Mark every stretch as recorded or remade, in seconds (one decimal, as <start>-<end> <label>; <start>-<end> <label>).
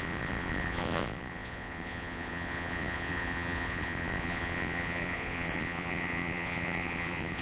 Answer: 0.0-7.4 remade